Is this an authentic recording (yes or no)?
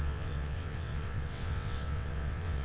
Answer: no